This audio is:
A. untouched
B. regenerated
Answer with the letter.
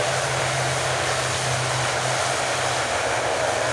A